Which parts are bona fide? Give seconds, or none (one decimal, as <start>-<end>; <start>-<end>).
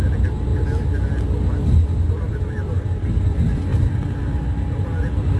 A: 0.5-1.8; 3.7-4.8